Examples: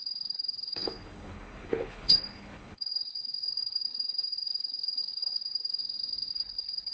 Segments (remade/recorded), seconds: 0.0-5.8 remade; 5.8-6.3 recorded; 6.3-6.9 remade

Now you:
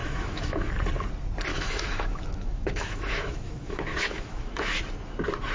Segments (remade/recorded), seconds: 0.0-0.7 remade; 0.7-1.5 recorded; 1.5-4.8 remade; 4.8-5.5 recorded

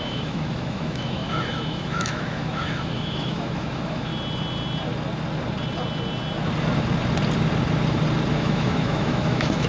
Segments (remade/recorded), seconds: 0.0-4.1 remade; 4.1-8.3 recorded; 8.3-9.7 remade

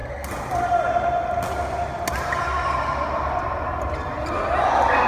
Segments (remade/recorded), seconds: 0.0-5.1 recorded

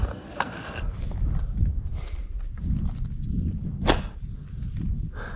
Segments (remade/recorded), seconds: 0.0-0.9 remade; 0.9-5.4 recorded

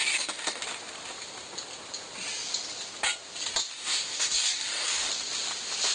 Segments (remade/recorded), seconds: 0.0-0.6 remade; 0.6-3.7 recorded; 3.7-5.1 remade; 5.1-5.9 recorded

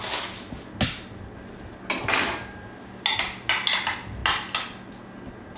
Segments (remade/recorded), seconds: 0.0-5.6 recorded